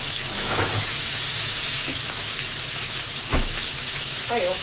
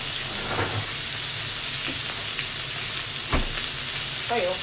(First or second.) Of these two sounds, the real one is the second